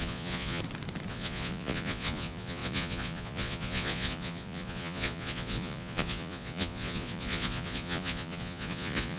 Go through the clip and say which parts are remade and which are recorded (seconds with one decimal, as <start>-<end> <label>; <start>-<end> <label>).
0.0-0.6 remade; 0.6-1.1 recorded; 1.1-9.2 remade